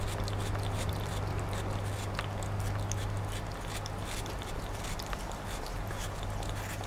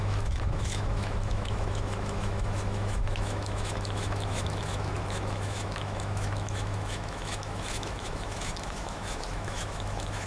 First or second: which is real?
first